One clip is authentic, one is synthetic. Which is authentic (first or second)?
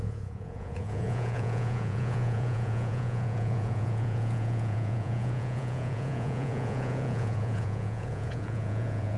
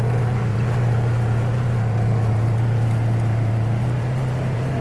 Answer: second